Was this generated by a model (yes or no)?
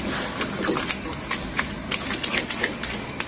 no